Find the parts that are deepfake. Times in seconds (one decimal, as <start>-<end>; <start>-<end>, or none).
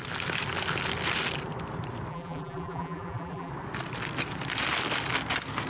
2.1-3.5